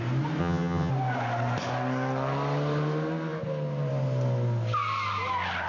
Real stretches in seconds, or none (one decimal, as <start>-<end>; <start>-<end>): 0.0-0.4; 0.9-5.7